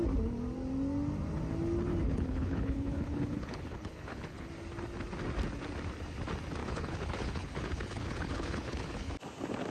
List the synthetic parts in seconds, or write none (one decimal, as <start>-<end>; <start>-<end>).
2.0-4.5; 6.6-9.1